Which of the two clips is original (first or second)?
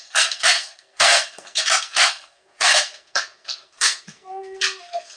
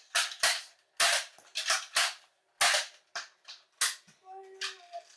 second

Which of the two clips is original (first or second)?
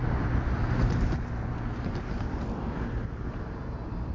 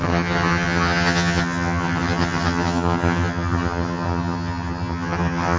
first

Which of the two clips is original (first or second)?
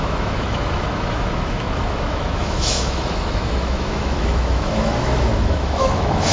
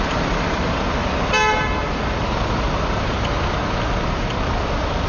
second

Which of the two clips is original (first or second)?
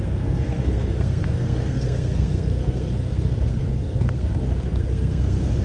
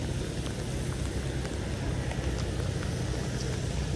second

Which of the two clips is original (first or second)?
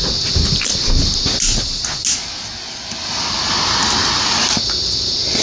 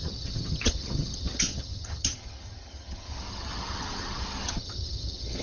first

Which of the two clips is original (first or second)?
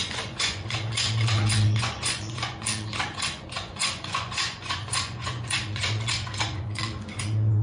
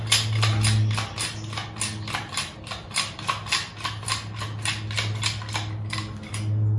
second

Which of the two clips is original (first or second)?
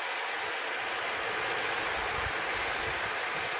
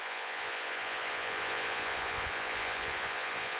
first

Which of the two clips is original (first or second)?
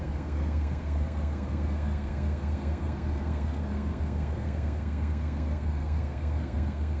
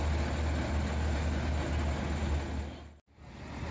second